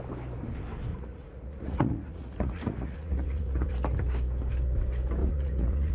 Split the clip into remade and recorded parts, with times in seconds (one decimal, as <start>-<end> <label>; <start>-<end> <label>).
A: 0.0-0.9 recorded; 0.9-3.7 remade; 3.7-5.2 recorded; 5.2-5.9 remade